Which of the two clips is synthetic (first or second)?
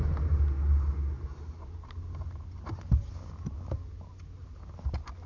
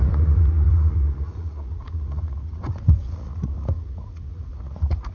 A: second